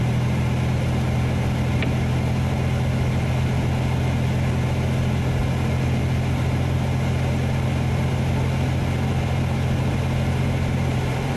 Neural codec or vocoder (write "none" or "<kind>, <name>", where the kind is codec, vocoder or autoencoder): none